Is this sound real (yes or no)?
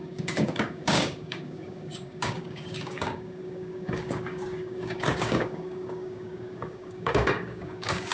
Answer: no